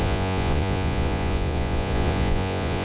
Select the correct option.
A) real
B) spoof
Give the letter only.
B